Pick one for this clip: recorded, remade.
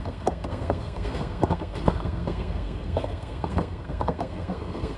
remade